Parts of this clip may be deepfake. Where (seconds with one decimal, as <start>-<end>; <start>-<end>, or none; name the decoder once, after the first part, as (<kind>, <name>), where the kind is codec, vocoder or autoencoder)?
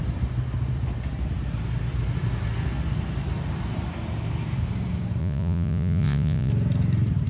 5.2-6.5 (vocoder, Vocos)